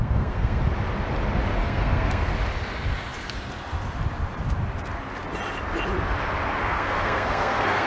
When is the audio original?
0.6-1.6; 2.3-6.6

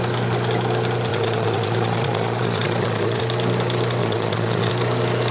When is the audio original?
0.0-1.1; 3.2-4.0; 4.7-5.3

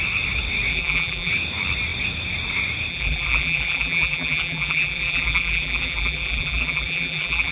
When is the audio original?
0.0-0.7; 1.3-2.9